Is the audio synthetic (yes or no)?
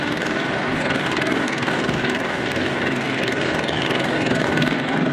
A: yes